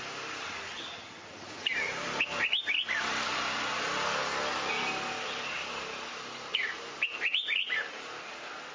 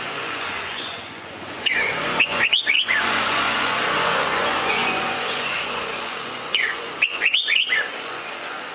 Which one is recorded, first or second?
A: first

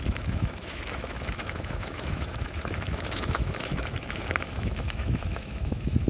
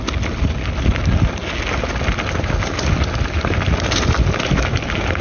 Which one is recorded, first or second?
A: second